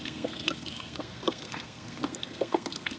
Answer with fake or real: fake